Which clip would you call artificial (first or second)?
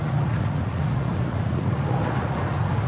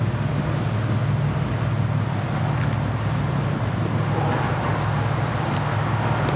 first